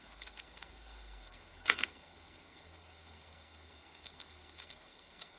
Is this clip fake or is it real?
fake